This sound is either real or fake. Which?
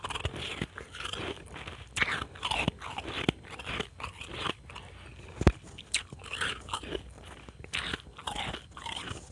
real